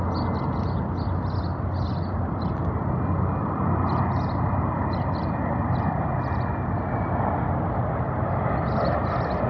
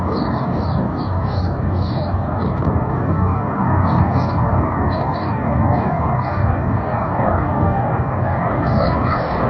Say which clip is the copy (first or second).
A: second